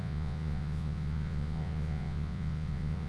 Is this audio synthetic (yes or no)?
yes